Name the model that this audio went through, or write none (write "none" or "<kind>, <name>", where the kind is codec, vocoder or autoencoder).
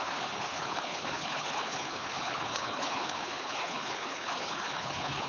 codec, HILCodec